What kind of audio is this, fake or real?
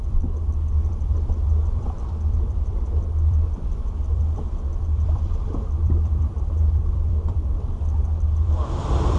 fake